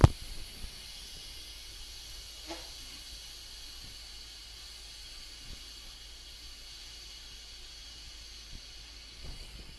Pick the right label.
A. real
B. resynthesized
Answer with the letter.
A